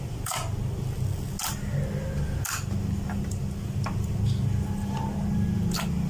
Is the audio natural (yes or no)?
yes